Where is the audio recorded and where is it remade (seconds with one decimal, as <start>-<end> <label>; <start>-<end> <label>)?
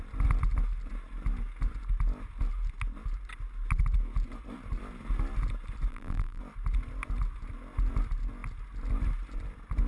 0.0-5.9 recorded; 5.9-6.4 remade; 6.4-9.9 recorded